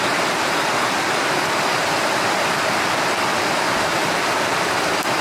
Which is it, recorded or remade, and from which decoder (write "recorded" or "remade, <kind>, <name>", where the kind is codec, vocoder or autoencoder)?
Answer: recorded